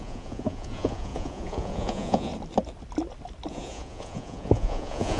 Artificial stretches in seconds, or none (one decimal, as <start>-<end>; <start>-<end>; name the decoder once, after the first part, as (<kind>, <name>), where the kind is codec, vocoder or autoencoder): 0.0-2.3 (vocoder, Vocos); 3.5-5.2